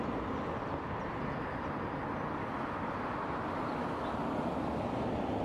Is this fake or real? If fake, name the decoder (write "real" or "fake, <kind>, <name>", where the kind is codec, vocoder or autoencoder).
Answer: real